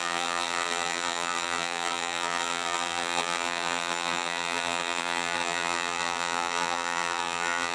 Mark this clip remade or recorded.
remade